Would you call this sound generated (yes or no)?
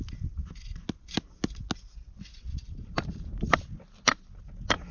no